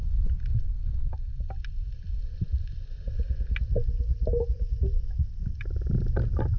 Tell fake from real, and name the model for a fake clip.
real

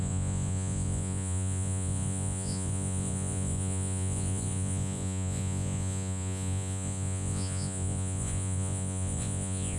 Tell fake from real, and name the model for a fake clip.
fake, vocoder, Vocos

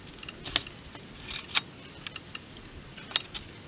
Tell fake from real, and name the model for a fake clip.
real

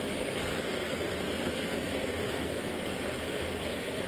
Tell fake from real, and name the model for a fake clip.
fake, codec, SNAC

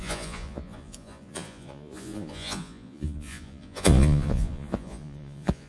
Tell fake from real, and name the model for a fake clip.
fake, vocoder, Vocos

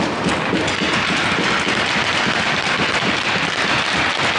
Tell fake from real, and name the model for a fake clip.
real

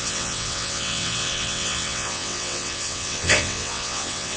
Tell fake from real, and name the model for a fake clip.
fake, vocoder, WaveNeXt